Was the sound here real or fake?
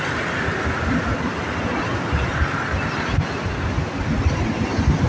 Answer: real